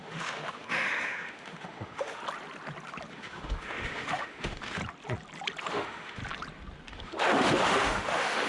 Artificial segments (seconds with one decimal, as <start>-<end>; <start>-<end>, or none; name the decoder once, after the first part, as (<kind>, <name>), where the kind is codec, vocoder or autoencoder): 0.0-2.2 (autoencoder, DAC-VAE); 3.1-4.8; 5.7-6.2; 6.9-8.5